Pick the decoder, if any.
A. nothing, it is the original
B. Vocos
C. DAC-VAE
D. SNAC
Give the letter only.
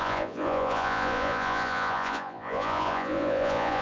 B